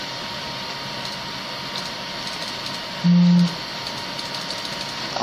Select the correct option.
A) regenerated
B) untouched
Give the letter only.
B